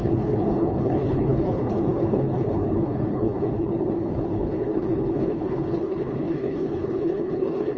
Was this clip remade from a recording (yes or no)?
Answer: yes